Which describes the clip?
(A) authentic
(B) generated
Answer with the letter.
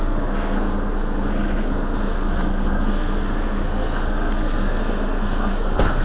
B